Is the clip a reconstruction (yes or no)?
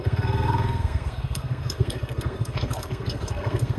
yes